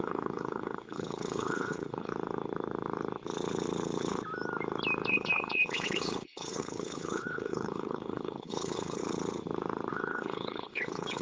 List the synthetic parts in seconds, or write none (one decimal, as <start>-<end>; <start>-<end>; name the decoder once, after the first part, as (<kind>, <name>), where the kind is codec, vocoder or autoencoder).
0.0-2.1 (codec, HILCodec); 5.1-9.0; 9.9-11.2